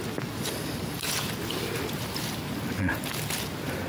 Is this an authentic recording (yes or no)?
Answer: yes